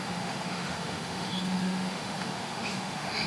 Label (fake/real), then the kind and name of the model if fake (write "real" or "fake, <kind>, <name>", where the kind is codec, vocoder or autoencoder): fake, autoencoder, DAC-VAE